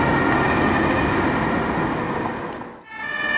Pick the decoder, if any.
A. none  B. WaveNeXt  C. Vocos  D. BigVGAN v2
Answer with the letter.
A